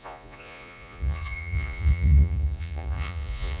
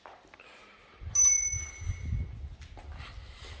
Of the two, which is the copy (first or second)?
first